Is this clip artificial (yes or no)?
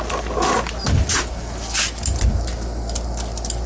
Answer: no